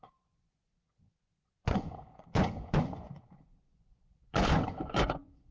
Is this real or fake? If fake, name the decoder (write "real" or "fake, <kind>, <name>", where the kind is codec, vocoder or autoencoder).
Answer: fake, vocoder, Vocos